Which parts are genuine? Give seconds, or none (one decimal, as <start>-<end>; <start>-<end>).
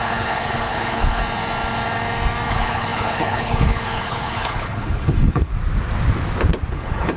1.2-2.5; 5.5-6.7